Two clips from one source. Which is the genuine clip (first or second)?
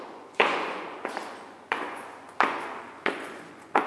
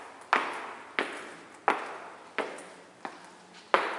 second